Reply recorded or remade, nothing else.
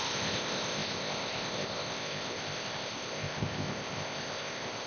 remade